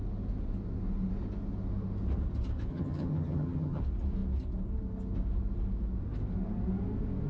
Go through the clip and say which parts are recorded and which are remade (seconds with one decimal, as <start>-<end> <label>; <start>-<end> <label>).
0.0-2.7 recorded; 2.7-3.8 remade; 3.8-7.3 recorded